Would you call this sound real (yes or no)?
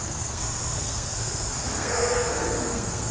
no